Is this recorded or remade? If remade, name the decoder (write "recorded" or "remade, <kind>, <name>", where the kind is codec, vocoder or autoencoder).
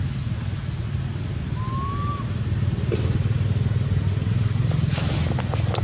recorded